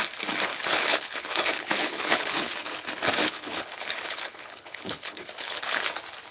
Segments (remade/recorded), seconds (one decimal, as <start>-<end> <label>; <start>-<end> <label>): 0.0-0.5 recorded; 0.5-2.8 remade; 2.8-3.2 recorded; 3.2-5.8 remade; 5.8-6.3 recorded

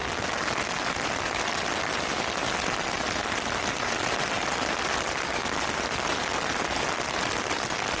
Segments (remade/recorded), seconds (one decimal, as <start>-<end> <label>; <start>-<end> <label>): 0.0-8.0 recorded

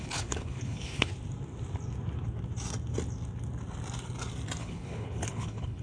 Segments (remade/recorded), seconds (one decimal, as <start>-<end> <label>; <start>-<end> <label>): 0.0-1.1 remade; 1.1-4.6 recorded; 4.6-5.8 remade

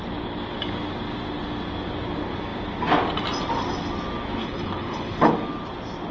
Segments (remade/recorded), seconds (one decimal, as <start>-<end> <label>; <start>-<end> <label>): 0.0-4.4 recorded; 4.4-5.3 remade; 5.3-6.1 recorded